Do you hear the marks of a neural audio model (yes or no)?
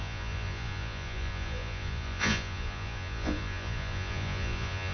yes